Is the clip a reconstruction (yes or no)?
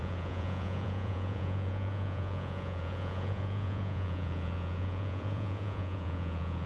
yes